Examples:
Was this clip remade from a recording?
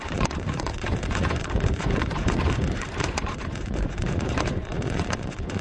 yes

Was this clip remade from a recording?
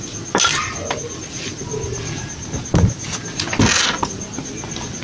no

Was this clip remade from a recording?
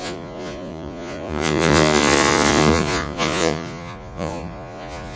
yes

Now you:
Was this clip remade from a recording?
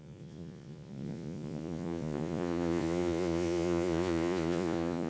yes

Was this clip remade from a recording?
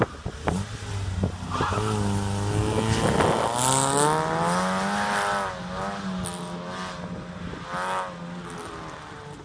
no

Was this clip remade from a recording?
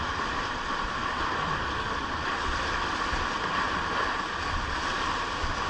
no